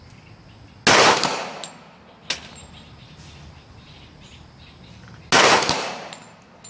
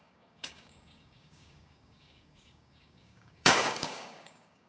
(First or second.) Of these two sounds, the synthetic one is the second